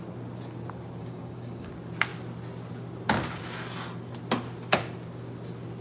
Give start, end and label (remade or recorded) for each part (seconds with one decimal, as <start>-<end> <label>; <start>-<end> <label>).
0.0-1.0 recorded; 1.0-1.7 remade; 1.7-5.8 recorded